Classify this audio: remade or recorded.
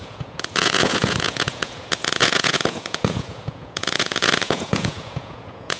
remade